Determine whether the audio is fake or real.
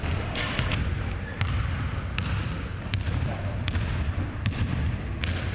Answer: real